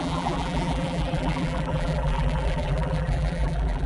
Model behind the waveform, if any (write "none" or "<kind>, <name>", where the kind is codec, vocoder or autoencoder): vocoder, BigVGAN v2